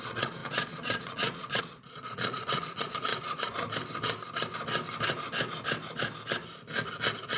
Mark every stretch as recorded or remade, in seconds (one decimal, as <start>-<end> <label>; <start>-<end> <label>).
0.0-3.1 remade; 3.1-7.4 recorded